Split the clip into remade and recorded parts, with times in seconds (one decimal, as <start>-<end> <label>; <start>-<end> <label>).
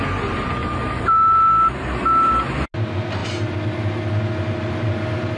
0.0-0.6 recorded; 0.6-2.3 remade; 2.3-5.4 recorded